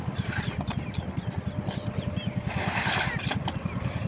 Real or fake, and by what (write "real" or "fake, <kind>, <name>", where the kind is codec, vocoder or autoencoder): real